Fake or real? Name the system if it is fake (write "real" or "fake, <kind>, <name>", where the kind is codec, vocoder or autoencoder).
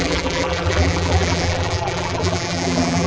fake, vocoder, BigVGAN v2